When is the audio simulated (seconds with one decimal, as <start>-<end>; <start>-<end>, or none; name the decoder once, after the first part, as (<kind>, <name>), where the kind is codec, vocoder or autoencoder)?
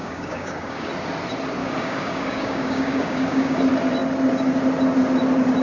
0.0-0.9 (codec, DAC); 1.6-3.6